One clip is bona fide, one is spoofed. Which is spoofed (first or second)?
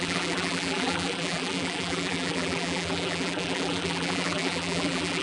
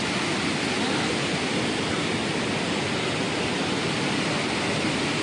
first